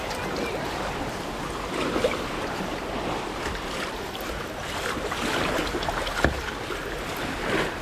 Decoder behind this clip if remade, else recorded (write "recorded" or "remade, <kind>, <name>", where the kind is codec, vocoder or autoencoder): recorded